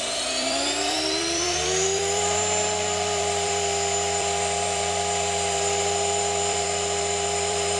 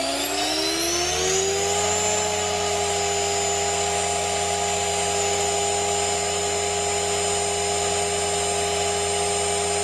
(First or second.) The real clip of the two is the second